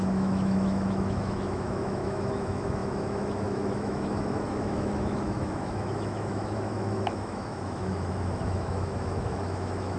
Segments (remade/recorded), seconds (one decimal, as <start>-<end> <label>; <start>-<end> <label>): 0.0-10.0 remade